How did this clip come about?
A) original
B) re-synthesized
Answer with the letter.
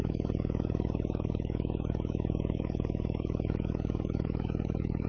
B